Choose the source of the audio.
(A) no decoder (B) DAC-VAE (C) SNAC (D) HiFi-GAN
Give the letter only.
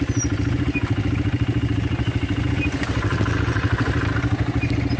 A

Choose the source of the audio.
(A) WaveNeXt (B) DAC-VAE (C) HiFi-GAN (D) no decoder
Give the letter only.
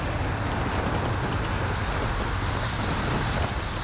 D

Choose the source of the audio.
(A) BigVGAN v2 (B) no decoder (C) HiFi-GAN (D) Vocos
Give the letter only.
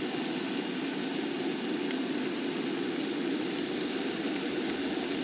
B